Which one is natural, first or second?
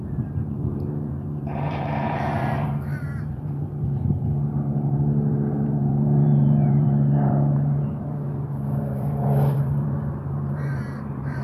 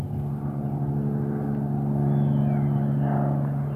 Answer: second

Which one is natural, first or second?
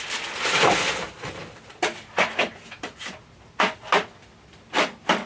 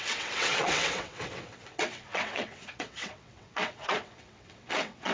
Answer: first